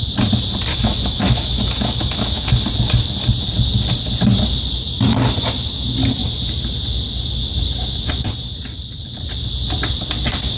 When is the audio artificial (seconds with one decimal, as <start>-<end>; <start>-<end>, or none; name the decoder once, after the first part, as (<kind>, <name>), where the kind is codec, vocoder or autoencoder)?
0.7-2.5 (autoencoder, DAC-VAE)